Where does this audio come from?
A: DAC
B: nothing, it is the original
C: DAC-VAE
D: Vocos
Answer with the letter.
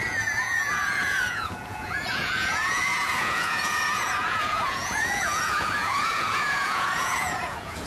D